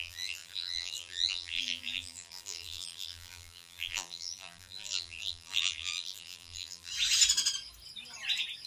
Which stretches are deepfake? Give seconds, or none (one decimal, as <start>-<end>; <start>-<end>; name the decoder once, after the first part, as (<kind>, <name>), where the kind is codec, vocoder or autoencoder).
0.0-6.9 (vocoder, BigVGAN v2)